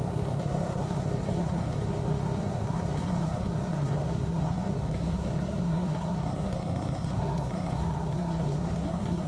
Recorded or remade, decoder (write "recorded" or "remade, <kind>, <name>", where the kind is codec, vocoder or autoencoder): remade, codec, SNAC